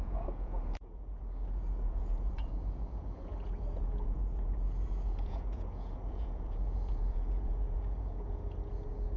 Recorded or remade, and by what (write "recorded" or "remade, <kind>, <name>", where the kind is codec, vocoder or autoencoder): remade, vocoder, Vocos